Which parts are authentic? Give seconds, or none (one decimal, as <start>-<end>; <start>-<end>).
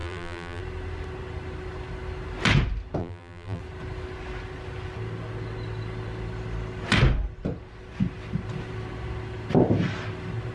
0.6-3.0; 3.6-10.5